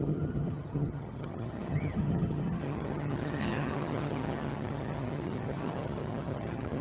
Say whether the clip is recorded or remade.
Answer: remade